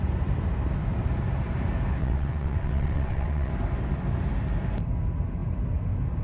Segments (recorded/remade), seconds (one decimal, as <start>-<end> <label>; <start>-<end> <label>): 0.0-2.0 recorded; 2.0-3.5 remade; 3.5-6.2 recorded